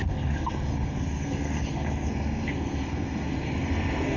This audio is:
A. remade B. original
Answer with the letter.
A